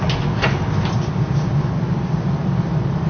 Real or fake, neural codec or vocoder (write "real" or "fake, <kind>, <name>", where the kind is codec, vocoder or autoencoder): real